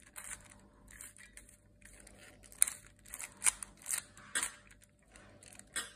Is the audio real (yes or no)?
yes